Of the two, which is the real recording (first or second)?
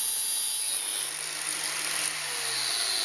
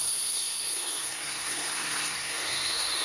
first